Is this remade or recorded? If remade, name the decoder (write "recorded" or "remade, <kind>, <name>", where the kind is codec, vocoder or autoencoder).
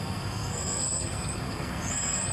remade, codec, SNAC